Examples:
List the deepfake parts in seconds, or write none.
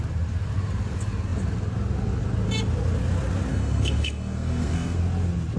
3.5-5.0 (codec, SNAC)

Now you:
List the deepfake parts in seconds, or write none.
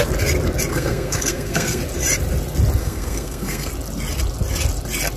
0.7-1.8 (codec, SNAC); 2.8-3.7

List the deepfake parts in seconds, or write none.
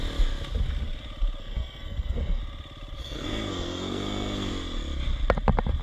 1.4-2.4 (codec, SNAC); 3.0-4.5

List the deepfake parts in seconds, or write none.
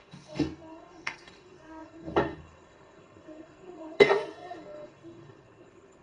0.0-6.0 (codec, SNAC)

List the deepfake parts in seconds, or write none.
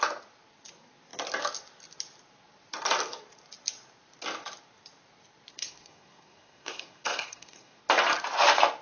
5.5-7.8 (codec, SNAC)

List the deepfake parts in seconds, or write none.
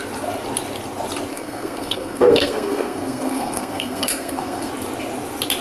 1.3-4.7 (codec, SNAC)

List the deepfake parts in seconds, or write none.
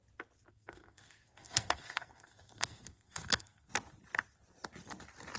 0.5-3.7 (codec, SNAC)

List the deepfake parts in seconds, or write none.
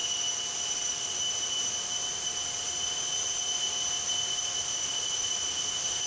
none